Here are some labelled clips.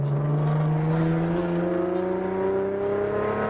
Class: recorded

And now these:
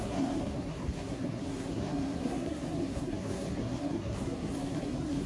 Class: remade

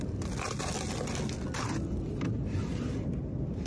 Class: recorded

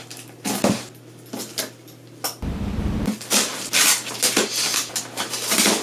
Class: recorded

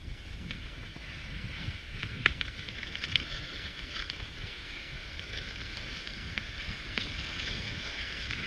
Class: remade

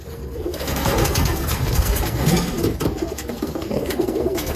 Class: remade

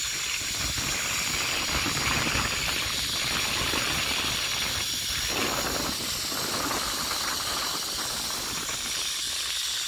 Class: recorded